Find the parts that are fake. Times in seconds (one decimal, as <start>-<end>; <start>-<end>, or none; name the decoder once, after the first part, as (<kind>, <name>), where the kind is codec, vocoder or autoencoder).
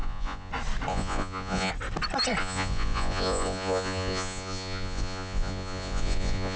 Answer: 0.0-0.5 (vocoder, Vocos); 0.9-1.7; 2.4-6.6